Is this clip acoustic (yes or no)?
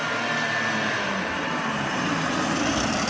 yes